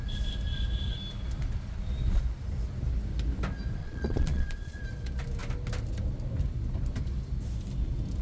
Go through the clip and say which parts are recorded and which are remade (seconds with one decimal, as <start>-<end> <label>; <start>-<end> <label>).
0.0-3.8 recorded; 3.8-4.8 remade; 4.8-8.2 recorded